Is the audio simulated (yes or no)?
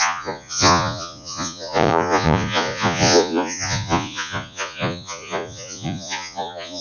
yes